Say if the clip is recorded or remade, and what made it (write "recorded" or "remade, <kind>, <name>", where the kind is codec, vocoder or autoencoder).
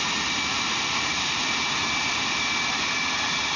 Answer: recorded